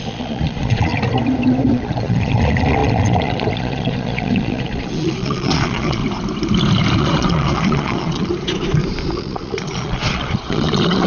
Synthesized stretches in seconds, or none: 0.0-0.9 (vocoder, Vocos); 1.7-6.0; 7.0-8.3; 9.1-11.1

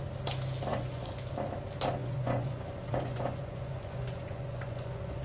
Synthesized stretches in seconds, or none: 0.7-1.3 (vocoder, Vocos); 2.0-5.2

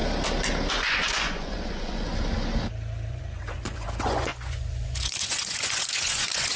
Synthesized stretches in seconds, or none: 0.7-2.1 (vocoder, Vocos); 3.1-6.6

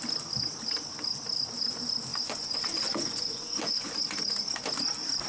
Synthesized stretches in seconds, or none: 2.1-4.0 (vocoder, Vocos)